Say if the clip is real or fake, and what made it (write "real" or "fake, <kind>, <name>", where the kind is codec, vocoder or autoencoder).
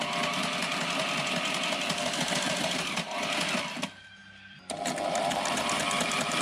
real